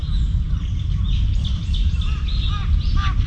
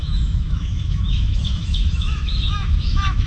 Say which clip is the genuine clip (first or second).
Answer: first